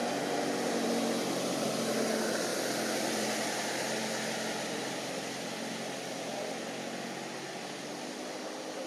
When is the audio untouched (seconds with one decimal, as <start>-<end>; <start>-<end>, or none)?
0.0-8.9